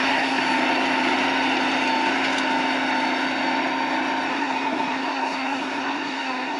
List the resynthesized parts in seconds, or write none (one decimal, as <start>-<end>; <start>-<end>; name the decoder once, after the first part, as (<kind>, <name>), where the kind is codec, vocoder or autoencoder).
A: 0.0-0.4 (codec, SNAC); 4.3-6.6